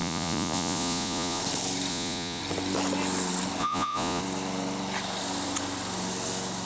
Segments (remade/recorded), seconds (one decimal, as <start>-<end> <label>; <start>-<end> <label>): 0.0-1.4 remade; 1.4-1.9 recorded; 1.9-2.4 remade; 2.4-3.6 recorded; 3.6-4.2 remade; 4.2-6.7 recorded